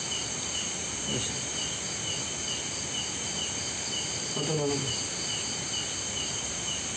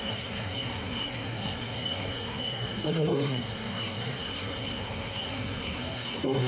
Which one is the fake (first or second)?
second